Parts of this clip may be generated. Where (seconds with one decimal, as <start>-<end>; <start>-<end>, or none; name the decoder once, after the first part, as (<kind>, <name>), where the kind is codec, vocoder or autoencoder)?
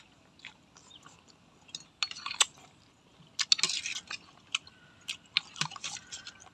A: none